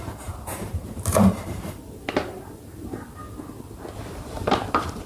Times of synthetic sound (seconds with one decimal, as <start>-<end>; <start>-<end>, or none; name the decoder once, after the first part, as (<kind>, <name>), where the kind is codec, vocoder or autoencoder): 0.0-3.2 (vocoder, BigVGAN v2); 4.1-5.1